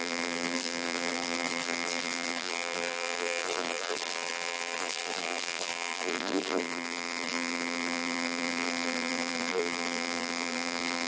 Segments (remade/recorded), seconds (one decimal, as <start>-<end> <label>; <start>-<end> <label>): 0.0-11.1 remade